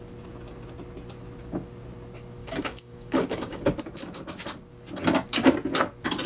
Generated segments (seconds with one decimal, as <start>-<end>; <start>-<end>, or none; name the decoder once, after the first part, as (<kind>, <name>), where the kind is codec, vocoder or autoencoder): 2.4-3.6 (codec, DAC)